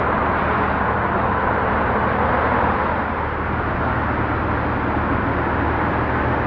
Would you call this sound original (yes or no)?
yes